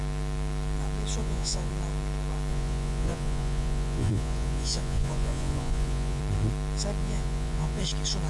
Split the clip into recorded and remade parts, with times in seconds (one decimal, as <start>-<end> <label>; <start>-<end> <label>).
0.0-1.2 recorded; 1.2-1.7 remade; 1.7-2.5 recorded; 2.5-6.2 remade; 6.2-7.0 recorded; 7.0-7.8 remade; 7.8-8.3 recorded